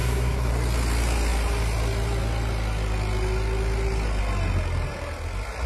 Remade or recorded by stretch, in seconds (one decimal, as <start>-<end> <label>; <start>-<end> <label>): 0.0-0.5 remade; 0.5-5.7 recorded

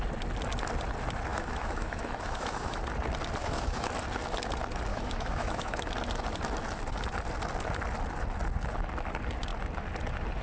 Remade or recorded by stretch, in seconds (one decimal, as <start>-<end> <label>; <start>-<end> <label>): 0.0-1.3 recorded; 1.3-2.8 remade; 2.8-3.4 recorded; 3.4-3.9 remade; 3.9-4.9 recorded; 4.9-5.9 remade; 5.9-10.4 recorded

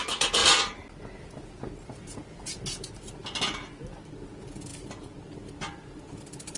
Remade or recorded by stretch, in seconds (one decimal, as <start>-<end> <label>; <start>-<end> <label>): 0.0-6.6 recorded

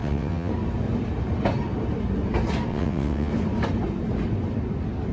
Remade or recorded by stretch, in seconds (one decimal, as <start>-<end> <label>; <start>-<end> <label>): 0.0-0.5 remade; 0.5-2.7 recorded; 2.7-3.3 remade; 3.3-5.1 recorded

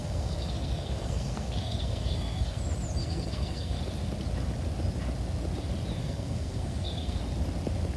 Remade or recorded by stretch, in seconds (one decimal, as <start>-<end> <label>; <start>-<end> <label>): 0.0-2.6 remade; 2.6-3.0 recorded; 3.0-3.8 remade; 3.8-6.0 recorded; 6.0-7.2 remade; 7.2-8.0 recorded

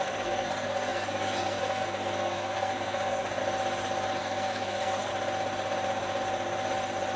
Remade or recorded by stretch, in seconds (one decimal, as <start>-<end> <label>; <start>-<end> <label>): 0.0-3.4 remade; 3.4-4.2 recorded; 4.2-5.1 remade; 5.1-7.2 recorded